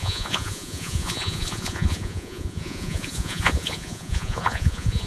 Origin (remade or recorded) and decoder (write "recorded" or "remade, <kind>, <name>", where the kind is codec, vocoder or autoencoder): remade, vocoder, Vocos